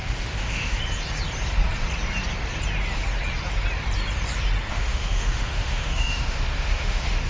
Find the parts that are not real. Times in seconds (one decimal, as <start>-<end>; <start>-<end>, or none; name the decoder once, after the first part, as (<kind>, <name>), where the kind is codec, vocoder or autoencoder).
0.0-0.8 (autoencoder, DAC-VAE); 4.7-7.3

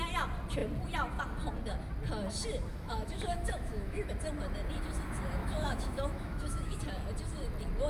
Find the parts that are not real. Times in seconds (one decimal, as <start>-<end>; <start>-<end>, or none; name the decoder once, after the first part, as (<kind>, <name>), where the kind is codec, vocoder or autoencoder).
2.7-4.1 (autoencoder, DAC-VAE); 5.4-6.8

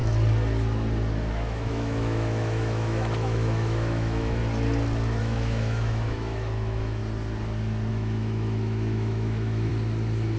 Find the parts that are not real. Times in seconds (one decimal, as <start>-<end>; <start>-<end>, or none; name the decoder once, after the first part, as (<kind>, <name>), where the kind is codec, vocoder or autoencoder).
1.3-4.4 (autoencoder, DAC-VAE); 5.2-7.0; 7.9-9.7

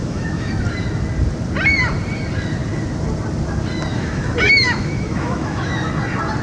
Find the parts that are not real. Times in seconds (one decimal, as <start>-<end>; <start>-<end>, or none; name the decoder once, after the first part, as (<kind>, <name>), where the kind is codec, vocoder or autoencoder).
0.0-0.5 (autoencoder, DAC-VAE); 3.9-5.9

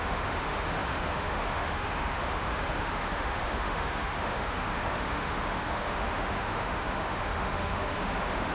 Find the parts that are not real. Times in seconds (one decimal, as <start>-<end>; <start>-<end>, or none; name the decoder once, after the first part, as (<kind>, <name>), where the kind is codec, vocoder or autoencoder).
0.0-8.5 (autoencoder, DAC-VAE)

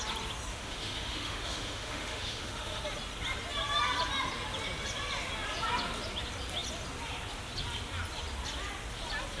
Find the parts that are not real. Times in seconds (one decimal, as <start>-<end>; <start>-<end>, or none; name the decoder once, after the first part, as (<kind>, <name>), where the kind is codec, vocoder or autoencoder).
0.5-2.8 (autoencoder, DAC-VAE)